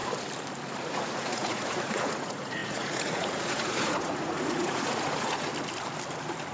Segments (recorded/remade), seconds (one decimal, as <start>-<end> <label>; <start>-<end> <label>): 0.0-0.9 recorded; 0.9-5.5 remade; 5.5-6.5 recorded